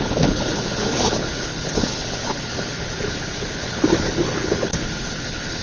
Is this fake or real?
fake